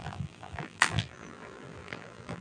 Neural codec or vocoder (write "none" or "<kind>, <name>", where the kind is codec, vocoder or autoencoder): vocoder, BigVGAN v2